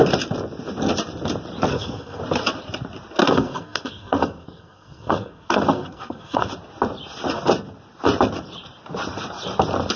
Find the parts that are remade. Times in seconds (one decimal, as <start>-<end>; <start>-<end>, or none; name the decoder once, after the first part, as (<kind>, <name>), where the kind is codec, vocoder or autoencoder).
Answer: 1.7-2.2 (codec, SNAC); 3.2-6.5